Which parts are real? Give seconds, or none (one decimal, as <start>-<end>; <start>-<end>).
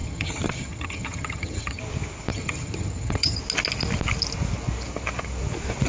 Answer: 1.8-2.3; 3.4-5.9